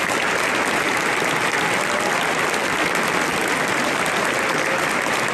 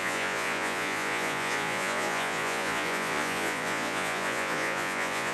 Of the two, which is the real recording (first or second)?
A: first